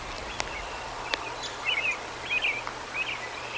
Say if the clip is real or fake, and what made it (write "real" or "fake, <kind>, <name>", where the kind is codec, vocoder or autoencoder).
real